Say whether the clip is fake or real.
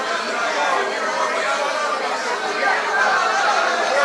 real